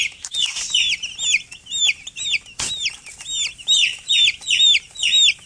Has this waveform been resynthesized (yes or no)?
no